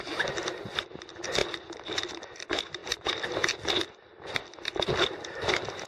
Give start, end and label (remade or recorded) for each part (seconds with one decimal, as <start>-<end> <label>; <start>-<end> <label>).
0.0-5.9 recorded